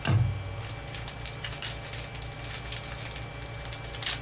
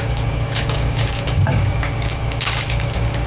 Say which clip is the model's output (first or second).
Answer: second